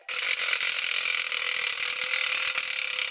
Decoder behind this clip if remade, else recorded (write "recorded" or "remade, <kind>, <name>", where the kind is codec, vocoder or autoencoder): recorded